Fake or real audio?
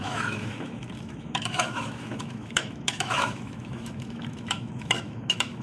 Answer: fake